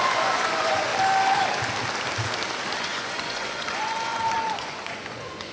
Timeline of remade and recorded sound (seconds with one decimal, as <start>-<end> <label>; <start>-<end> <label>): 0.0-0.9 remade; 0.9-2.8 recorded; 2.8-5.5 remade